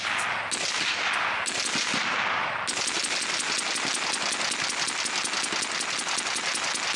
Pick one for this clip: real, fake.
real